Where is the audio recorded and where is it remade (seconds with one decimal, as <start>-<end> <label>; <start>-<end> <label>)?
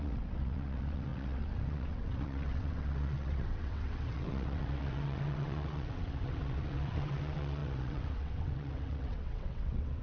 0.0-10.0 remade